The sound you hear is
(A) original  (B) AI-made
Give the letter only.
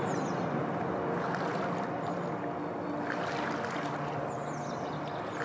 A